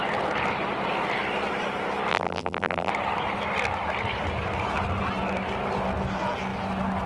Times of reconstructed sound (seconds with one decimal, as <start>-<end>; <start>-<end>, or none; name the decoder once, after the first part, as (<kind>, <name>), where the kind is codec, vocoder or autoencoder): 2.1-2.9 (vocoder, BigVGAN v2)